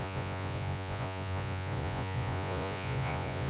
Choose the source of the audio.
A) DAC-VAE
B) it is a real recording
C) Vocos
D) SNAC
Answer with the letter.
C